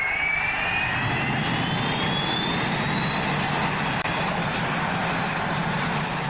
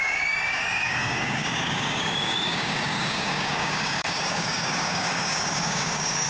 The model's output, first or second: second